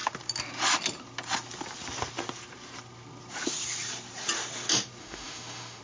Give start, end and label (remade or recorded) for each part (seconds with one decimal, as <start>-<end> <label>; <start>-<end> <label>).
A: 0.0-5.0 recorded; 5.0-5.8 remade